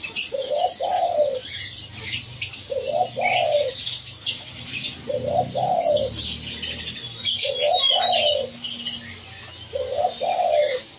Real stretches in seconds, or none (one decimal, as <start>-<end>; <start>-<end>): 0.0-11.0